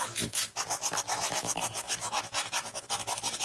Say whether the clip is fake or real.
fake